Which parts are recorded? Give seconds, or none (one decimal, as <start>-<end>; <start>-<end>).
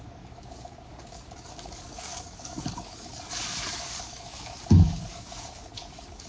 none